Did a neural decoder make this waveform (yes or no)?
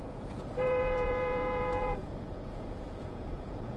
yes